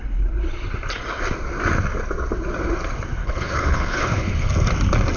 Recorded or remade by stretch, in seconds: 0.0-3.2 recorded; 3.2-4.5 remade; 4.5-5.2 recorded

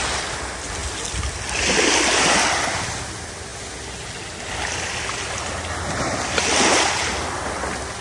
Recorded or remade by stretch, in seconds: 0.0-8.0 recorded

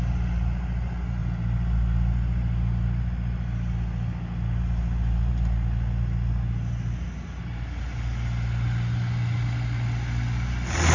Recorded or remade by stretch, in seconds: 0.0-10.9 recorded

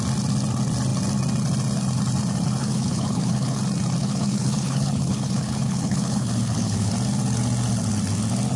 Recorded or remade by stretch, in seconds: 0.0-2.6 recorded; 2.6-3.6 remade; 3.6-4.0 recorded; 4.0-6.9 remade; 6.9-8.6 recorded

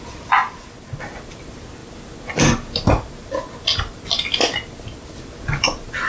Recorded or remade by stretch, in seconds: 0.0-6.1 recorded

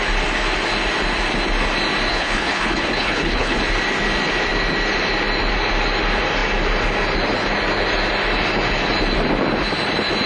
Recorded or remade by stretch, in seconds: 0.0-2.1 recorded; 2.1-3.6 remade; 3.6-10.3 recorded

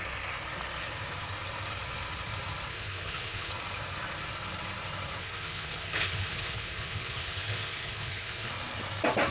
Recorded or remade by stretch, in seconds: 0.0-2.7 recorded; 2.7-3.5 remade; 3.5-5.2 recorded; 5.2-8.5 remade; 8.5-9.3 recorded